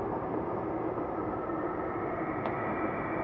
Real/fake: real